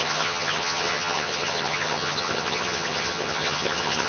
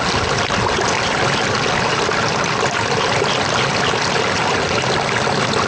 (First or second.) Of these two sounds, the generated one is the first